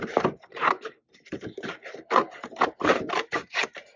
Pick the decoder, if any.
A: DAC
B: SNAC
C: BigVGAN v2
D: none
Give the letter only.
C